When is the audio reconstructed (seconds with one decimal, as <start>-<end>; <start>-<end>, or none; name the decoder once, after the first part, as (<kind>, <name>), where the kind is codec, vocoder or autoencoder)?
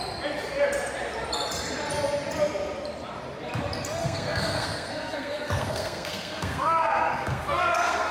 4.0-8.1 (codec, SNAC)